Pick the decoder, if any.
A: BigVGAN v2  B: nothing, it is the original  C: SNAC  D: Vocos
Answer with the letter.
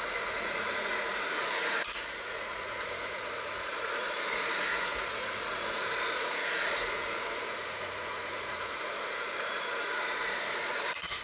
D